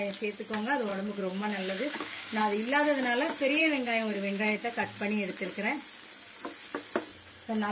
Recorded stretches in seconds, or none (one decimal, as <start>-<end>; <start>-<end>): 0.0-0.9; 2.4-3.6; 4.7-7.7